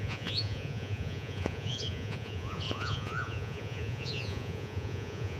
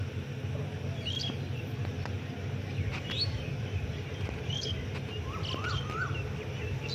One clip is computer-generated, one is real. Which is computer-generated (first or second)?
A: first